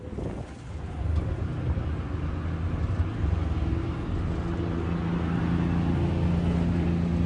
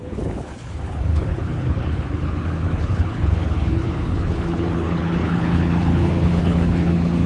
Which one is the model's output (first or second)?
second